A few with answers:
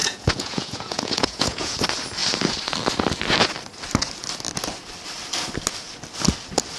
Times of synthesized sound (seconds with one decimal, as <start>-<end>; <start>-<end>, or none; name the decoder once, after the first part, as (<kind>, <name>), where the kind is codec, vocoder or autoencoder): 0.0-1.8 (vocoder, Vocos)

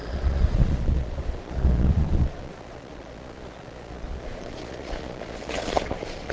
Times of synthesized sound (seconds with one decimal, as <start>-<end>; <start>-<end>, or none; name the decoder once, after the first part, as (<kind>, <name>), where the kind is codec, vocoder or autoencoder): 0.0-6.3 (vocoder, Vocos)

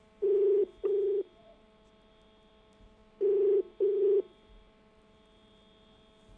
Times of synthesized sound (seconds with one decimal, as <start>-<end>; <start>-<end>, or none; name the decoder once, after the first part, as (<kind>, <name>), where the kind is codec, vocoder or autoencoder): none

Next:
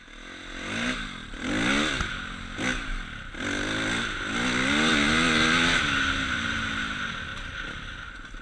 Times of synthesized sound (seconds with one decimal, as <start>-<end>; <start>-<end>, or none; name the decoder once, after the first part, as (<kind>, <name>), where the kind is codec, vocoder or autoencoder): none

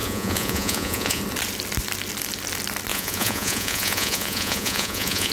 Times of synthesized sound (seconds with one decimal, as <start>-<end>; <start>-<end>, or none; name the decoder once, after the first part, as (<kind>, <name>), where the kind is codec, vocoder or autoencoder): 0.0-1.2 (vocoder, Vocos); 2.9-5.3